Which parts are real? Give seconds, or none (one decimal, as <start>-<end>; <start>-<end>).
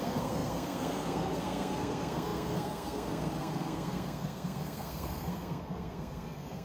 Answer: none